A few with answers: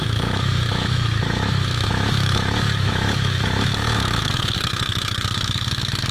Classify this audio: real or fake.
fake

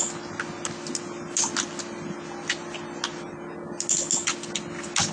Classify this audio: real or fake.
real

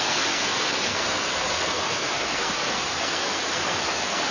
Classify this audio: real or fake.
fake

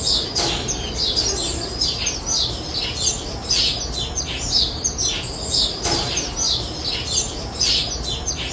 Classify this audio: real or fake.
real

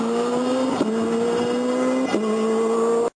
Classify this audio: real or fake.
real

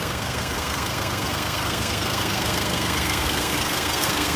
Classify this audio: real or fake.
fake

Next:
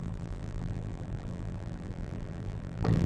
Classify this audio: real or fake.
fake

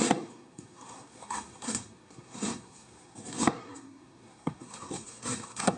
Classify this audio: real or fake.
fake